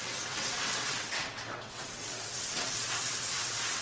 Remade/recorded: remade